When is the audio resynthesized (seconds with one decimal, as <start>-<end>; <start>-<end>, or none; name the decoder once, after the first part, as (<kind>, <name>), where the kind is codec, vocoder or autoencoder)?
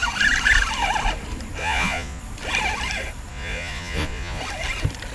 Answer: 1.6-2.2 (vocoder, Vocos); 3.3-4.4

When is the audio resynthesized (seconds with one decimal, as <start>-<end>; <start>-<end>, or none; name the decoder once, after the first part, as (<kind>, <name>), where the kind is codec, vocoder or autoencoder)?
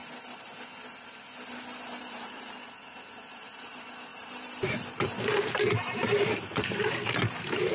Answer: 2.0-7.7 (vocoder, BigVGAN v2)